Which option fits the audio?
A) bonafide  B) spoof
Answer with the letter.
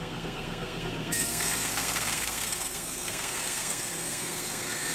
B